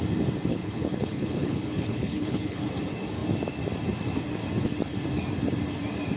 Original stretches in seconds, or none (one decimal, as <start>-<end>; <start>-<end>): 0.0-0.5; 2.6-6.2